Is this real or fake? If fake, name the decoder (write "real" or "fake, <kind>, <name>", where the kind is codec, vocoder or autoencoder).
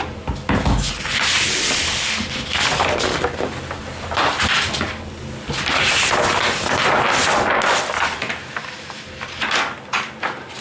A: real